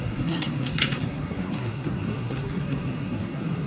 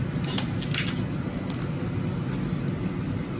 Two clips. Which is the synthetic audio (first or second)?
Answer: first